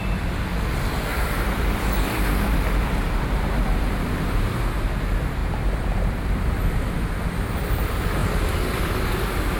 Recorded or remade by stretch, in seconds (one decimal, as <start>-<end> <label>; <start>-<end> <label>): 0.0-1.1 recorded; 1.1-4.6 remade; 4.6-5.4 recorded; 5.4-6.6 remade; 6.6-9.6 recorded

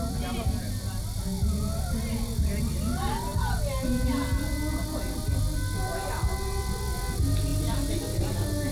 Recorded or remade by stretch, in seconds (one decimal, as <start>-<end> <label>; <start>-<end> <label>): 0.0-8.7 recorded